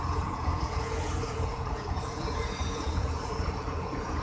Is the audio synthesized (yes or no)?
yes